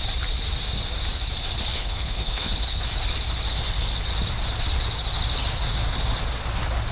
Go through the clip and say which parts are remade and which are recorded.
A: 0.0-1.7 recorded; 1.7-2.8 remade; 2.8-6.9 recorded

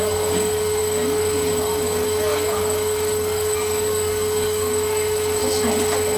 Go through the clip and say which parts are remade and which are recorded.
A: 0.0-5.4 remade; 5.4-6.2 recorded

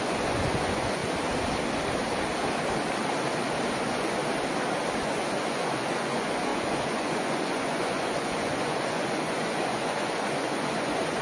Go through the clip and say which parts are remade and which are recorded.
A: 0.0-1.0 remade; 1.0-3.8 recorded; 3.8-4.2 remade; 4.2-5.0 recorded; 5.0-11.2 remade

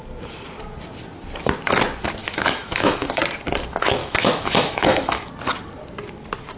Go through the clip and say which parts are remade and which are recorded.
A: 0.0-2.2 recorded; 2.2-3.2 remade; 3.2-4.0 recorded; 4.0-5.3 remade; 5.3-6.6 recorded

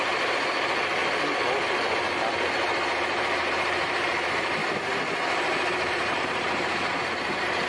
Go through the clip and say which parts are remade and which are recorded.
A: 0.0-1.0 remade; 1.0-3.5 recorded; 3.5-4.6 remade; 4.6-5.9 recorded; 5.9-7.7 remade